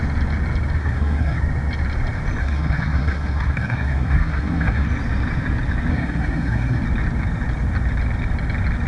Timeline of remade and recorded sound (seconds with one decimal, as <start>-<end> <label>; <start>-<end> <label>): 0.0-0.8 recorded; 0.8-1.4 remade; 1.4-2.4 recorded; 2.4-4.9 remade; 4.9-5.9 recorded; 5.9-6.8 remade; 6.8-8.9 recorded